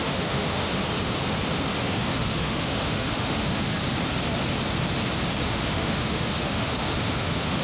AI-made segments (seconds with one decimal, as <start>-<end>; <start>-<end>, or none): 0.0-0.7; 1.8-3.7; 5.5-7.6